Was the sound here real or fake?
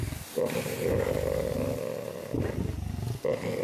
real